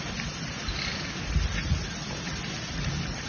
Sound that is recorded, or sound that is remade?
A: recorded